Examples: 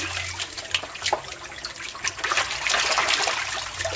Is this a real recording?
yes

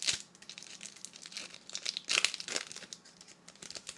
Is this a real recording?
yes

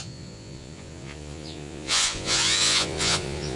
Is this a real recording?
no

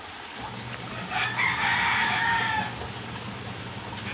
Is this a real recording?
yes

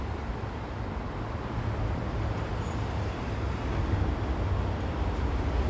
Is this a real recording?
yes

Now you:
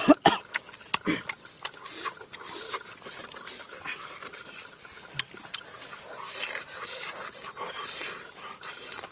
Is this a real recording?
yes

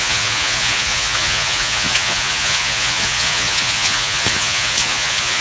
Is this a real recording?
no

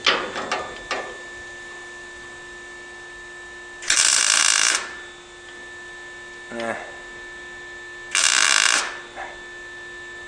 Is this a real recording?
yes